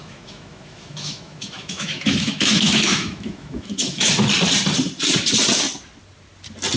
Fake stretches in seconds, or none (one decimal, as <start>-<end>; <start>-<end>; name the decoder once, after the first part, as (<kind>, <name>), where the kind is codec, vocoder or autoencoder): 0.0-4.1 (autoencoder, DAC-VAE)